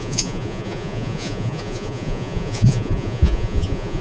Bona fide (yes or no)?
no